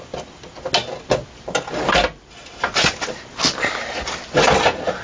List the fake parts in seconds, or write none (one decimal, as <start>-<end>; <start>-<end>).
none